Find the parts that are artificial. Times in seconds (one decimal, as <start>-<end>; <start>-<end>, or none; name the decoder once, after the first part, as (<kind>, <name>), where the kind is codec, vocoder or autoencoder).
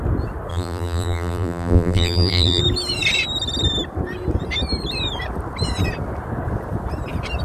0.5-2.6 (vocoder, BigVGAN v2)